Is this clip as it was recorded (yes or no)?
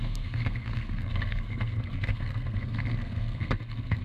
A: no